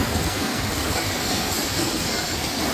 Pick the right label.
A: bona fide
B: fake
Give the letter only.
B